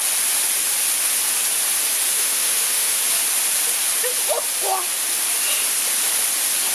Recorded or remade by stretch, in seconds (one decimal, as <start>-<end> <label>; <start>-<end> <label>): 0.0-2.1 recorded; 2.1-3.0 remade; 3.0-6.7 recorded

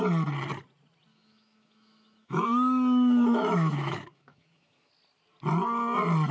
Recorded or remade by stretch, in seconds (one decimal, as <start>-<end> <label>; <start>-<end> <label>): 0.0-1.1 recorded; 1.1-4.9 remade; 4.9-6.3 recorded

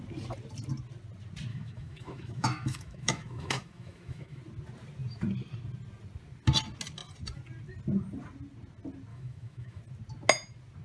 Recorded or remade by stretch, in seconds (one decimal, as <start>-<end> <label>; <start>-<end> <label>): 0.0-1.5 recorded; 1.5-4.4 remade; 4.4-9.1 recorded; 9.1-9.8 remade; 9.8-10.8 recorded

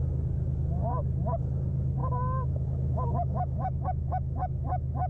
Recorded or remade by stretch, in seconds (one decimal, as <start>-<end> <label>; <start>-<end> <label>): 0.0-2.0 recorded; 2.0-5.1 remade

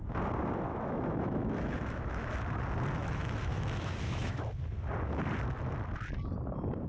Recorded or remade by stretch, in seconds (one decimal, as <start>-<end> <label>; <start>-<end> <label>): 0.0-0.7 recorded; 0.7-2.3 remade; 2.3-3.0 recorded; 3.0-4.4 remade; 4.4-6.9 recorded